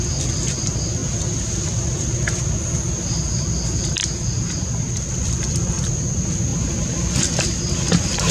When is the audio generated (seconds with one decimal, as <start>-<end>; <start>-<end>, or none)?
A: 0.0-4.0; 5.1-6.5; 7.9-8.3